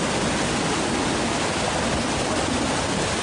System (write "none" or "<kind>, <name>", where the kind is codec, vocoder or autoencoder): none